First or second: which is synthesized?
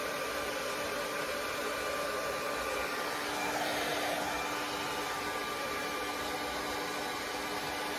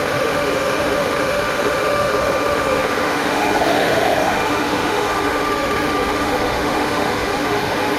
second